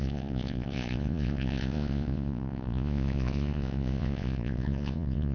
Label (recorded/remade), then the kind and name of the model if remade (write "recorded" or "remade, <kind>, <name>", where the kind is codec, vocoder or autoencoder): remade, vocoder, Vocos